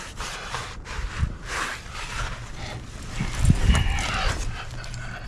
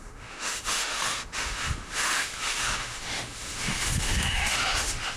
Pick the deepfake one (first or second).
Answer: second